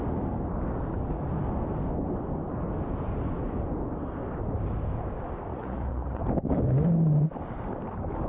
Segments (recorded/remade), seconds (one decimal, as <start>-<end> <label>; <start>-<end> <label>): 0.0-5.5 recorded; 5.5-6.2 remade; 6.2-8.3 recorded